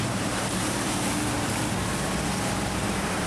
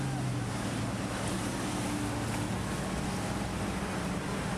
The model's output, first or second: first